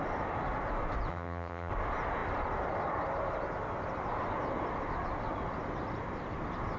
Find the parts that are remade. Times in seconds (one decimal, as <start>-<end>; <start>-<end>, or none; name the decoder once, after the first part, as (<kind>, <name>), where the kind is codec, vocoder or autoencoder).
1.1-1.7 (vocoder, HiFi-GAN)